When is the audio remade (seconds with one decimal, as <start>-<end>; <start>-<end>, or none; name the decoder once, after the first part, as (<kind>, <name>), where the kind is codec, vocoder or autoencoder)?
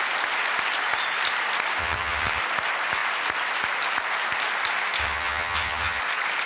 1.8-2.4 (vocoder, HiFi-GAN); 5.0-6.0